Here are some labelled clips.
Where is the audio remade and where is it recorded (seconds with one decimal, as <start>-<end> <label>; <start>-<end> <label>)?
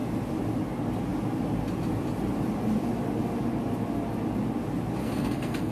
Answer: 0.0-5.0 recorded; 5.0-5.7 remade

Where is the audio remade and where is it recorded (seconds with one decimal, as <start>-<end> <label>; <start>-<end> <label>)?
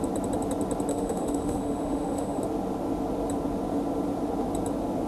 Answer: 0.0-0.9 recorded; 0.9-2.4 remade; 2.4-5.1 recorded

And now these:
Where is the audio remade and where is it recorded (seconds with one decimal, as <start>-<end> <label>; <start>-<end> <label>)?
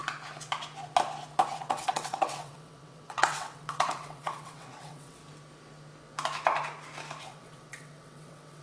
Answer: 0.0-1.5 recorded; 1.5-5.2 remade; 5.2-7.2 recorded; 7.2-8.6 remade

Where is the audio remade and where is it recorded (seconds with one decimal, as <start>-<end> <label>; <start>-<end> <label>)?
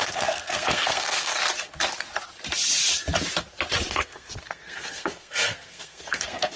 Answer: 0.0-1.4 remade; 1.4-3.9 recorded; 3.9-6.6 remade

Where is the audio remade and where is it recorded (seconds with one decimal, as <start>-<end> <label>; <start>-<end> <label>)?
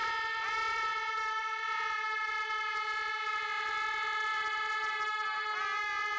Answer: 0.0-6.2 recorded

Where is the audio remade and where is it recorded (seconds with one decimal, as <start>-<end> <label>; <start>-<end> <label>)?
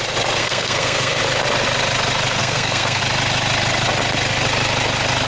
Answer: 0.0-0.4 recorded; 0.4-1.2 remade; 1.2-2.4 recorded; 2.4-3.0 remade; 3.0-5.3 recorded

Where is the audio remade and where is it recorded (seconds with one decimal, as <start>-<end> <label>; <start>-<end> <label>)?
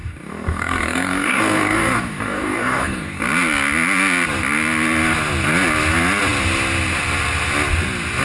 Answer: 0.0-3.2 remade; 3.2-8.2 recorded